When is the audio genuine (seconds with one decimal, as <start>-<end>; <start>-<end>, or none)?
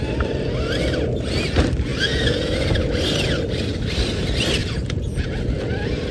0.0-1.9; 2.5-4.6; 5.3-6.1